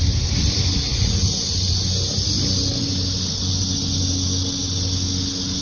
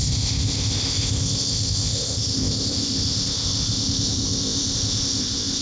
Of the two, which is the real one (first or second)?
first